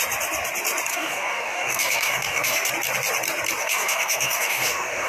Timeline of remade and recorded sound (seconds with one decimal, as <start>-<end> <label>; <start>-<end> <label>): 0.0-0.9 recorded; 0.9-2.7 remade; 2.7-3.6 recorded; 3.6-5.1 remade